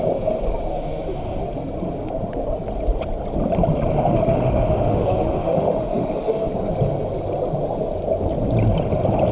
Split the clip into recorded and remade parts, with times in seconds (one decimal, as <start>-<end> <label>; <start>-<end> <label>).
0.0-0.7 recorded; 0.7-1.4 remade; 1.4-3.9 recorded; 3.9-6.5 remade; 6.5-9.3 recorded